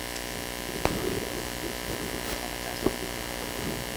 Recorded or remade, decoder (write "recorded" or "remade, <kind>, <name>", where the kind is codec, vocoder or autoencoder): recorded